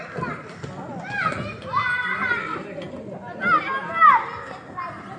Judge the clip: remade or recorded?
recorded